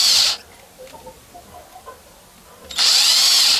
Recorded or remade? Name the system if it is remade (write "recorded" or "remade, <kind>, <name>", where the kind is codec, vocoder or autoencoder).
recorded